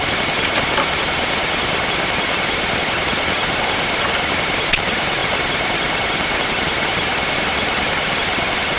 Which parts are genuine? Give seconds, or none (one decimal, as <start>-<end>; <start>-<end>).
0.0-8.8